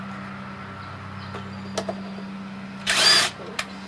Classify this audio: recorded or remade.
recorded